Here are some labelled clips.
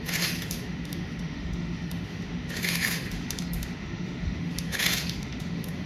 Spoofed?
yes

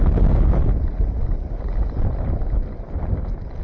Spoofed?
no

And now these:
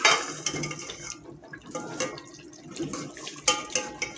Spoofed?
no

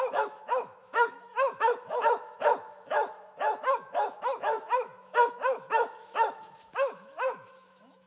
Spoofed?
yes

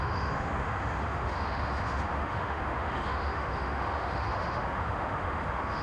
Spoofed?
yes